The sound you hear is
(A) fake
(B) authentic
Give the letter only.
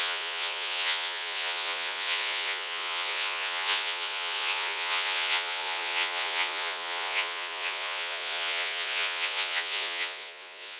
A